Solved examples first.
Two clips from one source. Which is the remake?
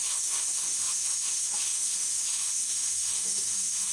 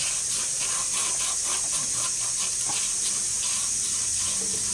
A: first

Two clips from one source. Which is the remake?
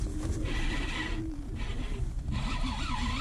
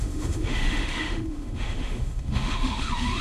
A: second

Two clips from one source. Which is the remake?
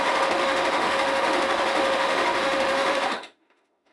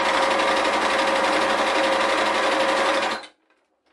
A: first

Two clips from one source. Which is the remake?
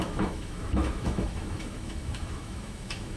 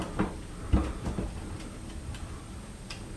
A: first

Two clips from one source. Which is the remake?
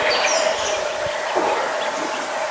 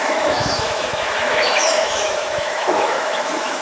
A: second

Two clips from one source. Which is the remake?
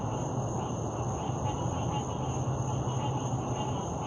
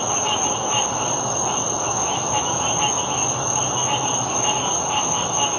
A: second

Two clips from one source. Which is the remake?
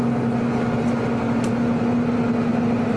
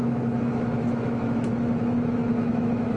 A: second